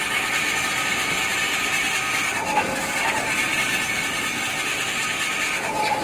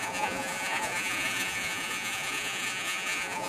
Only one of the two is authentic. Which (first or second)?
first